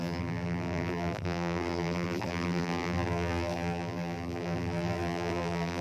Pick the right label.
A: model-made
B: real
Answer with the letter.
A